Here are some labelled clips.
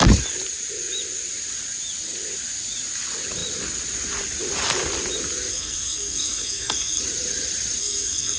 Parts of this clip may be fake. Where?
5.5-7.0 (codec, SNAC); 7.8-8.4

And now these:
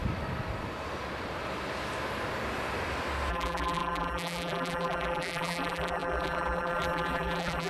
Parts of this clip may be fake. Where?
3.3-7.7 (vocoder, BigVGAN v2)

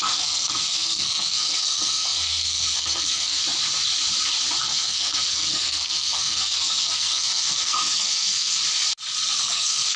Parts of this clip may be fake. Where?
0.0-3.4 (codec, SNAC); 4.6-8.6; 9.4-10.0